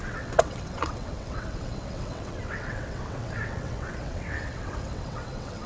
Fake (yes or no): yes